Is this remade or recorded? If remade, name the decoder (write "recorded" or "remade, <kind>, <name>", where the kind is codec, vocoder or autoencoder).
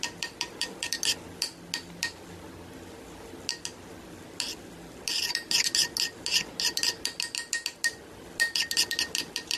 recorded